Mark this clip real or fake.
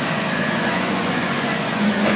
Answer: fake